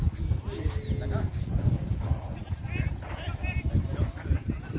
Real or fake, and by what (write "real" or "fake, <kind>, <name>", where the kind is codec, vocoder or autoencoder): real